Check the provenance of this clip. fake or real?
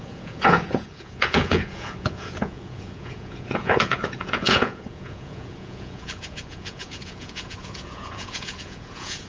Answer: fake